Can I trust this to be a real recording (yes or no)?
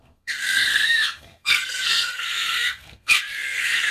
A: no